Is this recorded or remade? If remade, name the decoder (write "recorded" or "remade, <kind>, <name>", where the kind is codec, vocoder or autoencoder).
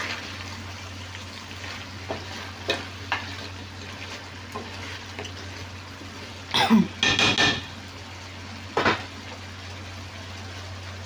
recorded